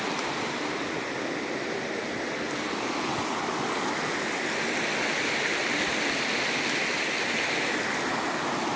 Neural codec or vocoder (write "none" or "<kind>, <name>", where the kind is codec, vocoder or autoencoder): none